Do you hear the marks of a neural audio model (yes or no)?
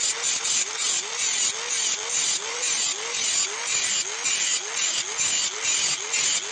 no